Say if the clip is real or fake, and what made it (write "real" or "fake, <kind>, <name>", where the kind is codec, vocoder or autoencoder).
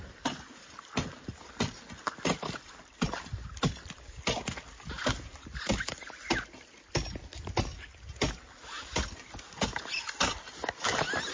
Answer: real